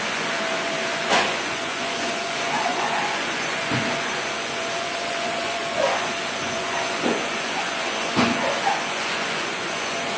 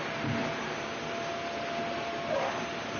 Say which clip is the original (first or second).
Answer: second